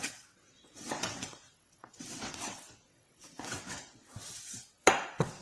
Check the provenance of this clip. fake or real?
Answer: fake